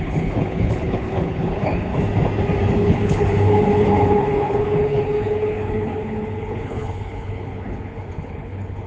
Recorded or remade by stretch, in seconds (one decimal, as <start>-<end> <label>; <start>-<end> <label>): 0.0-1.9 remade; 1.9-2.7 recorded; 2.7-8.9 remade